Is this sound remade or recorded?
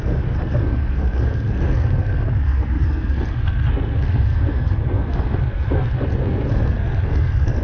remade